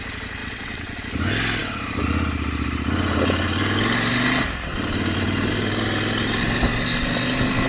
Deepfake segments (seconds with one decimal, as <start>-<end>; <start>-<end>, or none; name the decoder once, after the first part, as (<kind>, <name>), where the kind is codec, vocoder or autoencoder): 0.4-1.0 (vocoder, WaveNeXt)